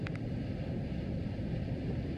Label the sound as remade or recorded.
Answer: recorded